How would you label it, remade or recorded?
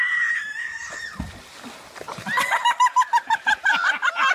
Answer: remade